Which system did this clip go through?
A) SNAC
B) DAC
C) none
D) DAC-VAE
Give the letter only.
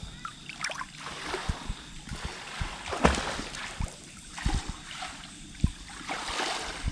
C